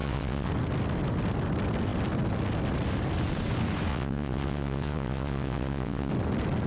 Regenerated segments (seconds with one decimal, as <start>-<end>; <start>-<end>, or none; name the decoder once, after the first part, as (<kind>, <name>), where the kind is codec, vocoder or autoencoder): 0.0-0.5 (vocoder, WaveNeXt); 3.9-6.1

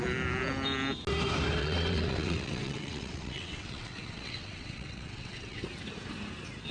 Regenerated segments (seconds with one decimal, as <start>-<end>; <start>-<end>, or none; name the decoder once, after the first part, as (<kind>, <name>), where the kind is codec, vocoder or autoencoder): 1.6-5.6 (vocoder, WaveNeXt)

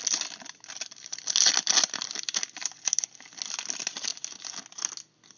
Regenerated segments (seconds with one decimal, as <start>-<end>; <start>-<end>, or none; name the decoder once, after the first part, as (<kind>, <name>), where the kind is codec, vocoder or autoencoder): none